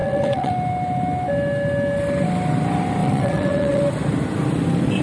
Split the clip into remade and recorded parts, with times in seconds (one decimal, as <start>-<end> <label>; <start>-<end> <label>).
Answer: 0.0-0.5 remade; 0.5-3.0 recorded; 3.0-3.8 remade; 3.8-5.0 recorded